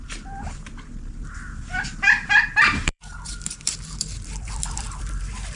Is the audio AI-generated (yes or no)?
yes